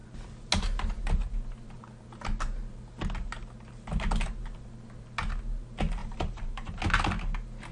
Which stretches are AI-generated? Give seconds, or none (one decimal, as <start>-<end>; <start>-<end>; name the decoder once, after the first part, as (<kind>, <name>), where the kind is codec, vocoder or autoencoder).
6.0-6.8 (vocoder, BigVGAN v2)